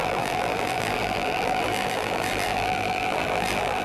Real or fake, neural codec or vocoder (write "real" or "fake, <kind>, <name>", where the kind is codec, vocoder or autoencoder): fake, vocoder, BigVGAN v2